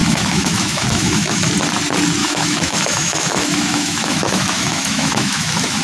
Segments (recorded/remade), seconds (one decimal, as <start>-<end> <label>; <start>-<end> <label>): 0.0-1.4 remade; 1.4-2.2 recorded; 2.2-5.8 remade